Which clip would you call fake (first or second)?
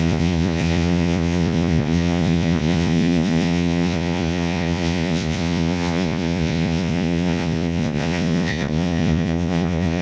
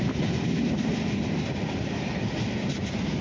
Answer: first